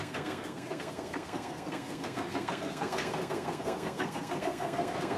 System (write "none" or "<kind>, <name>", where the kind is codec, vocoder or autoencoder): codec, SNAC